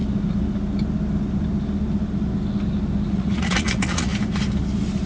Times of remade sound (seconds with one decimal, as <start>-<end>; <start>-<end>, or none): 3.1-4.1